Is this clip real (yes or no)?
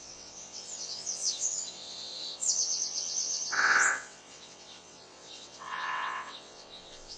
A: no